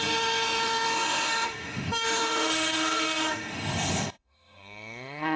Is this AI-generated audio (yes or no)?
yes